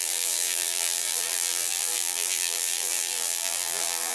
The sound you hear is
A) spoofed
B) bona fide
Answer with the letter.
A